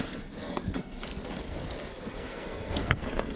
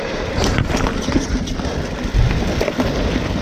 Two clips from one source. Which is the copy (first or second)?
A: first